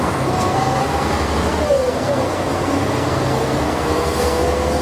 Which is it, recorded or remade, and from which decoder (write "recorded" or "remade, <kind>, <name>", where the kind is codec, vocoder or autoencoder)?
remade, codec, SNAC